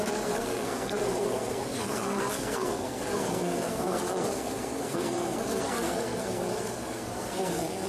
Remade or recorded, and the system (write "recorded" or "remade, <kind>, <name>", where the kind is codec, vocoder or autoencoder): remade, codec, SNAC